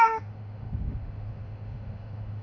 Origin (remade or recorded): remade